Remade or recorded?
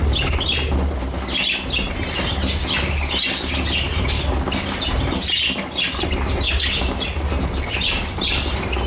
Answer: recorded